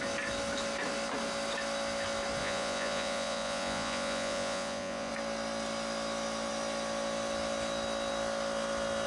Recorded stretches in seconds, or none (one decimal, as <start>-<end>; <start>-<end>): 0.0-2.4; 5.1-9.1